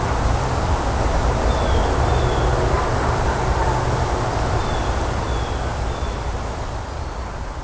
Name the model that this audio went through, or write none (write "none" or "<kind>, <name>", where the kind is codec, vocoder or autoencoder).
none